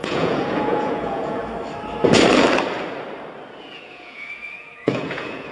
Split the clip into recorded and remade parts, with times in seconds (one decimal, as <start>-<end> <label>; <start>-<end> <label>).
0.0-1.4 remade; 1.4-3.6 recorded; 3.6-5.5 remade